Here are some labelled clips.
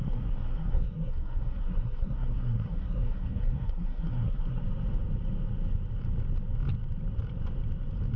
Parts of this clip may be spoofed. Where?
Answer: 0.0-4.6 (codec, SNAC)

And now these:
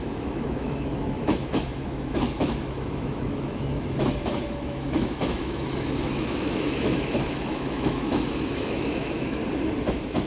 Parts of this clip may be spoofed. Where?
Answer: 0.0-9.4 (autoencoder, DAC-VAE); 9.9-10.3

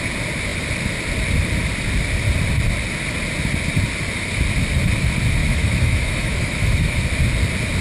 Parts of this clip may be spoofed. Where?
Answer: 5.4-7.0 (autoencoder, DAC-VAE)

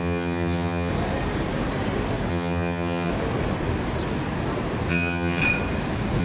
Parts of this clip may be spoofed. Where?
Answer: 0.0-0.9 (vocoder, HiFi-GAN); 2.3-3.1; 4.9-5.4

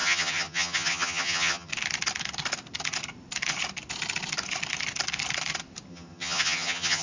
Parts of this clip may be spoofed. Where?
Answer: 0.0-1.7 (vocoder, HiFi-GAN); 5.9-7.0

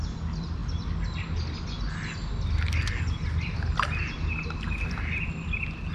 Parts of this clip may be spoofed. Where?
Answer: none

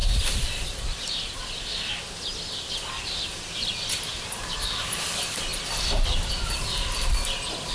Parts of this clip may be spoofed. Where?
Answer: 0.0-7.7 (vocoder, BigVGAN v2)